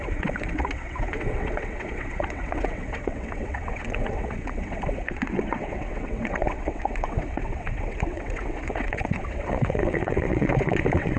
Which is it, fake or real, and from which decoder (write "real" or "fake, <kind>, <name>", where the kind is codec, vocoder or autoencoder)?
fake, vocoder, WaveNeXt